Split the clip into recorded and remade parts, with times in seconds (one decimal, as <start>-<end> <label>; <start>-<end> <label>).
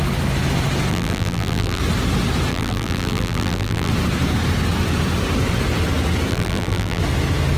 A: 0.0-0.9 recorded; 0.9-1.8 remade; 1.8-2.5 recorded; 2.5-3.9 remade; 3.9-6.3 recorded; 6.3-7.0 remade; 7.0-7.6 recorded